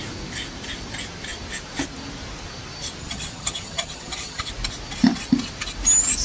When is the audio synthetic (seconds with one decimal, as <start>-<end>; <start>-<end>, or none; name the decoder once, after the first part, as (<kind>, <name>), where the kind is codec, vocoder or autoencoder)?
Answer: 3.0-4.5 (vocoder, HiFi-GAN)